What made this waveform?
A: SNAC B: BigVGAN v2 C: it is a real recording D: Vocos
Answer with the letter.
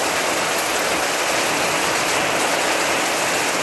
C